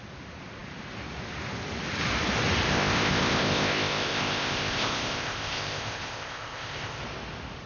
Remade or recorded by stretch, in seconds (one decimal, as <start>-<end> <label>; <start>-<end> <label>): 0.0-2.7 recorded; 2.7-7.0 remade; 7.0-7.7 recorded